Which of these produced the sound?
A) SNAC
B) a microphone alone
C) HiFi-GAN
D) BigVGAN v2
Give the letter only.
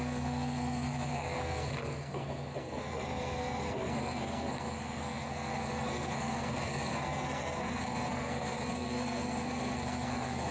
A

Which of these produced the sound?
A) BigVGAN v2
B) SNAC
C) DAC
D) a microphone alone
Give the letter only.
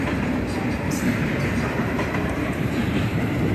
A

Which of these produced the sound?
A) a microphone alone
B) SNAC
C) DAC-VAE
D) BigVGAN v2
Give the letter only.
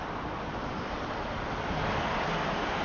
A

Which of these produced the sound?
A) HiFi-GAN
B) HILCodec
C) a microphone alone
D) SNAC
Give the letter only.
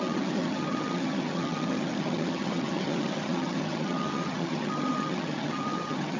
A